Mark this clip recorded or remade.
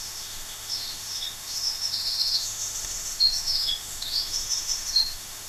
remade